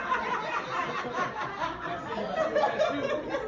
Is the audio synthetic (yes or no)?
no